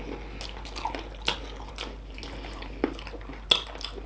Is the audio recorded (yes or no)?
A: yes